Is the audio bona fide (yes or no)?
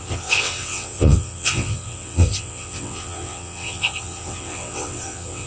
no